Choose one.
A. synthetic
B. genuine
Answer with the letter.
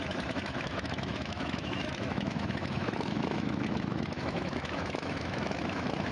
A